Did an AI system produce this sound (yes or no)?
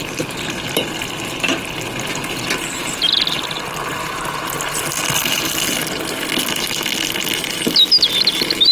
no